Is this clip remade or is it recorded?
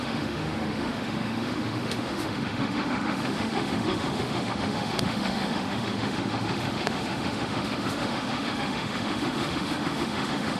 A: remade